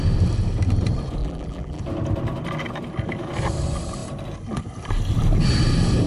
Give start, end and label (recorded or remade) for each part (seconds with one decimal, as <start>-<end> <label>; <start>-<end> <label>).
0.0-1.2 recorded; 1.2-1.8 remade; 1.8-6.1 recorded